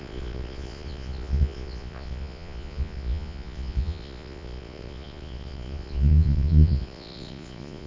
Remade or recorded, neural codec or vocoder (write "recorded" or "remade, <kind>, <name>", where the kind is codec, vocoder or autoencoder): remade, vocoder, Vocos